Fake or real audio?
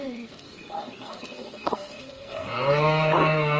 fake